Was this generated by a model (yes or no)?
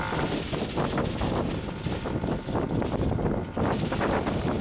no